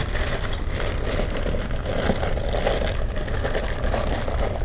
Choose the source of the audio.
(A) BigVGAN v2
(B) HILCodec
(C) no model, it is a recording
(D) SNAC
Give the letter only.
C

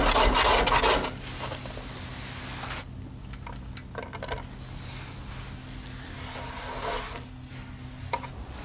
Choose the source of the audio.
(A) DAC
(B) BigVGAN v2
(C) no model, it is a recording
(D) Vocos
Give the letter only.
C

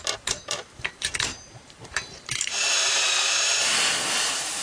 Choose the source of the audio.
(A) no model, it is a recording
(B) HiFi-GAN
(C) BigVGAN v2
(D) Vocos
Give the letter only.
C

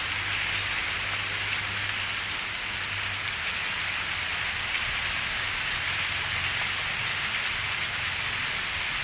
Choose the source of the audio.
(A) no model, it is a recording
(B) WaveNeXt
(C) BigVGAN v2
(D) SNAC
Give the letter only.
A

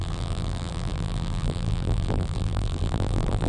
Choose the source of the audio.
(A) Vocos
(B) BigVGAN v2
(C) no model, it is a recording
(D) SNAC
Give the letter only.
B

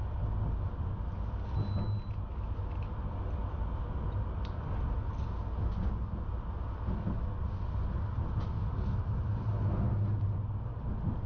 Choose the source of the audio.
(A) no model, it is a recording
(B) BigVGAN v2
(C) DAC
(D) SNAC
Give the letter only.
A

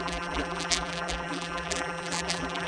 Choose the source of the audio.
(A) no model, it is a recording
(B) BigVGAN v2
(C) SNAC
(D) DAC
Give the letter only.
B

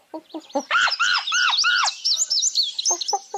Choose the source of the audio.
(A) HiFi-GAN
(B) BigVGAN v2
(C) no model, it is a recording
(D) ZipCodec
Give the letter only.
C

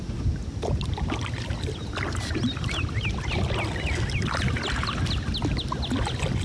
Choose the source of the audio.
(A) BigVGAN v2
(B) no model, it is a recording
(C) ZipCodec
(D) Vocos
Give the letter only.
B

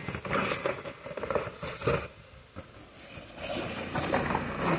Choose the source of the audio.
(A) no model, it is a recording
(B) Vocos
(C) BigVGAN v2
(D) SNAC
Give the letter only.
A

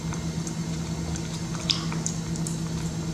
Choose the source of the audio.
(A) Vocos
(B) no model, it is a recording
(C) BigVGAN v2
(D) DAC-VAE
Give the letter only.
C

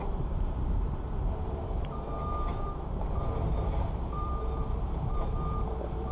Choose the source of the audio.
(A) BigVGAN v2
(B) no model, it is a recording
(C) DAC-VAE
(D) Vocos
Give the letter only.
A